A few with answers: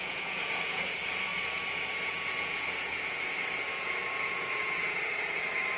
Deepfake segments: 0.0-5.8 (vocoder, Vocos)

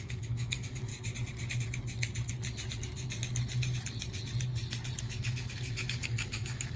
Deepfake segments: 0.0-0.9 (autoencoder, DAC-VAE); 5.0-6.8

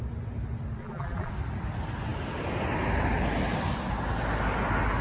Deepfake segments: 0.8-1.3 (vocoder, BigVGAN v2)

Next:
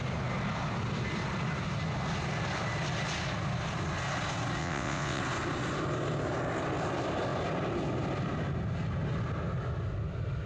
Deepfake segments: 4.6-5.2 (vocoder, WaveNeXt)

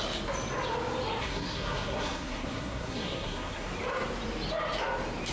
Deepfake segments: 1.2-3.7 (codec, SNAC)